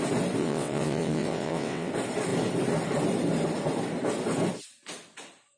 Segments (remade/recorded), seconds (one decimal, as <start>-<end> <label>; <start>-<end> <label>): 0.0-0.4 recorded; 0.4-1.9 remade; 1.9-5.6 recorded

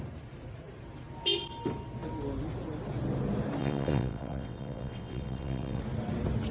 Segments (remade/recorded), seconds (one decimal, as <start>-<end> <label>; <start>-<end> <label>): 0.0-3.6 recorded; 3.6-5.8 remade; 5.8-6.5 recorded

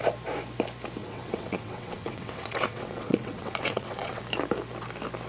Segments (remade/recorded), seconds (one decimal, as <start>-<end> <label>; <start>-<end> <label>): 0.0-1.0 recorded; 1.0-4.2 remade; 4.2-5.3 recorded

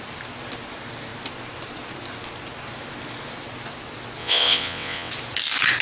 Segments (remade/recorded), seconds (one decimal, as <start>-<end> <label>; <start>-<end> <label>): 0.0-4.2 recorded; 4.2-5.1 remade; 5.1-5.8 recorded